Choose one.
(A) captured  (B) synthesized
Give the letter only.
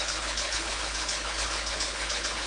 B